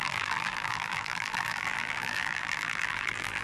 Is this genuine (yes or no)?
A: no